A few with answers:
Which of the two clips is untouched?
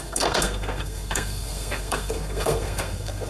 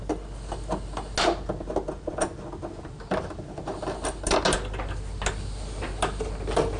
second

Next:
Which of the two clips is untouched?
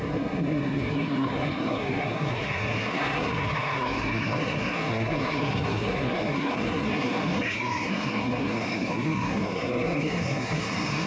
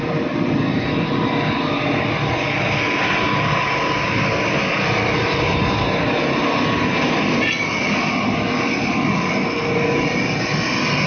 second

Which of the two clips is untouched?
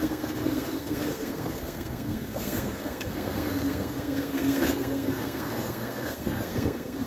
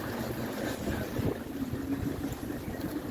second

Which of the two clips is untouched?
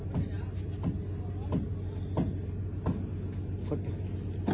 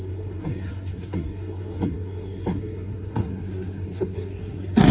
first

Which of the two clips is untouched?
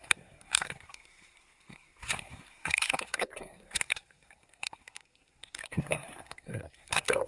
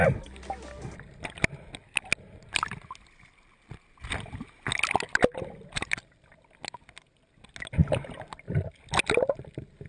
second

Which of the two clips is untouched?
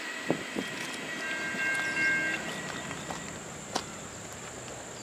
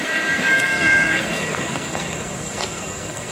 first